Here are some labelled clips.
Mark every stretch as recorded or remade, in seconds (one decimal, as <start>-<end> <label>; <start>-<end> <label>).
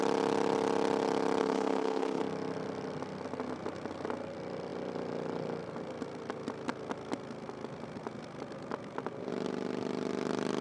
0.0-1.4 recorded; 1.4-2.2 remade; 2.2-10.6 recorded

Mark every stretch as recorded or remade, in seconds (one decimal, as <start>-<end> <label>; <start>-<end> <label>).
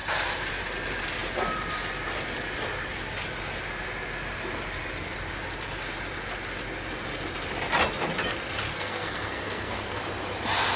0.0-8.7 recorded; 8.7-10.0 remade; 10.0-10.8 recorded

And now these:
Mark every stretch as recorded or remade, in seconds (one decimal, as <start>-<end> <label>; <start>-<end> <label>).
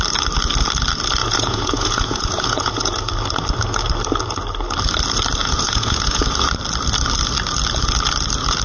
0.0-1.2 recorded; 1.2-3.1 remade; 3.1-5.4 recorded; 5.4-6.2 remade; 6.2-8.6 recorded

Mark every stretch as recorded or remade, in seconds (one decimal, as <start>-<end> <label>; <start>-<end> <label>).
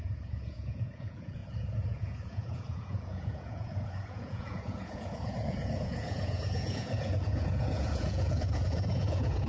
0.0-9.5 remade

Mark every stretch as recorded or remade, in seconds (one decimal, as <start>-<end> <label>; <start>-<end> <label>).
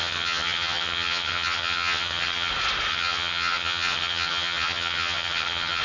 0.0-2.5 remade; 2.5-2.9 recorded; 2.9-5.8 remade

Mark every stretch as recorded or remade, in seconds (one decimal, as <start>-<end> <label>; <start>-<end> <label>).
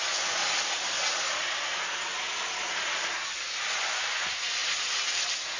0.0-0.4 remade; 0.4-3.8 recorded; 3.8-4.6 remade; 4.6-5.6 recorded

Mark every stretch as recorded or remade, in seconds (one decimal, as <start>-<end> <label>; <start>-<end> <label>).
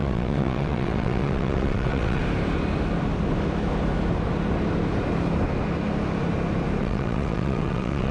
0.0-2.2 remade; 2.2-6.8 recorded; 6.8-8.1 remade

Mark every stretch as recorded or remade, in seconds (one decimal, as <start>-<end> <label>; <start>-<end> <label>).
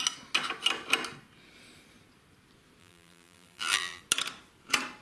0.0-2.8 recorded; 2.8-4.0 remade; 4.0-5.0 recorded